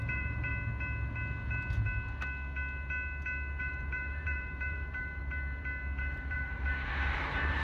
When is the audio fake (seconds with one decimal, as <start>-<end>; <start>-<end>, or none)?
0.0-0.5; 3.6-5.2; 6.0-7.6